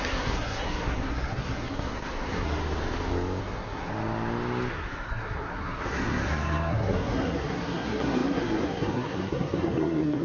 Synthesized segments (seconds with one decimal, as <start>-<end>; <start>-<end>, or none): 0.0-2.6; 3.4-3.9; 4.7-10.2